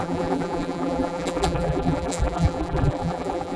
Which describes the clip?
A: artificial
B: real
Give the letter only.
A